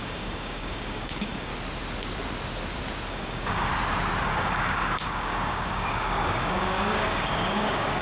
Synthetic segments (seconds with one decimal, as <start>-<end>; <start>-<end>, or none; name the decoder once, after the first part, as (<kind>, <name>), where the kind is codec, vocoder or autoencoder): 0.0-1.5 (codec, DAC); 3.1-3.7; 4.2-8.0